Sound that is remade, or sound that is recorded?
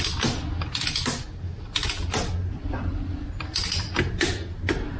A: recorded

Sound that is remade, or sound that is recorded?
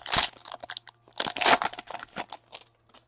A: recorded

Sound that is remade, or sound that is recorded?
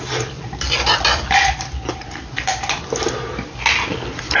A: recorded